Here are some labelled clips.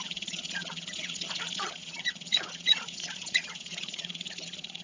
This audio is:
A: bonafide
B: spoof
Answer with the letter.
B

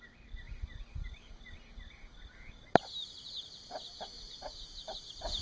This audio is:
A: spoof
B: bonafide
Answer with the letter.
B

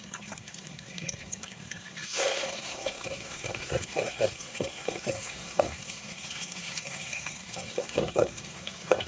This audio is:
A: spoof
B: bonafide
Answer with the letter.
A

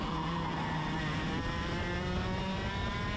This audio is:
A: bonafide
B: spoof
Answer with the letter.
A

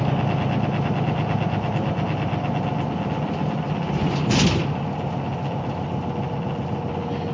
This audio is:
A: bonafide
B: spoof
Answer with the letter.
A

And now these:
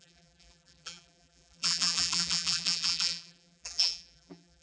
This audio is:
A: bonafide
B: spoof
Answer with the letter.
B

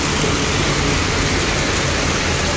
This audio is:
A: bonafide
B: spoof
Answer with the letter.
A